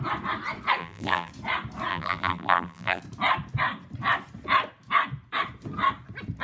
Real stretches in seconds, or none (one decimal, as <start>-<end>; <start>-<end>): 0.0-0.8; 1.3-1.9; 3.0-6.4